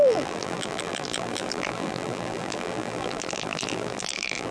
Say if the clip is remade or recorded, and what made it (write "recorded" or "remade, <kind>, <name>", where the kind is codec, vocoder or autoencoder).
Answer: remade, vocoder, BigVGAN v2